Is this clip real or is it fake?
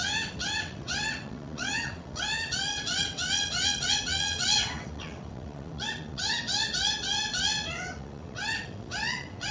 fake